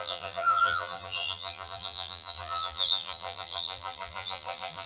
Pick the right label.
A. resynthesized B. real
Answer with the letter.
A